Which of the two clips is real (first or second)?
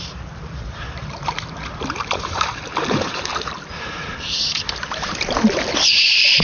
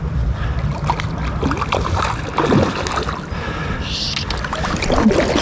second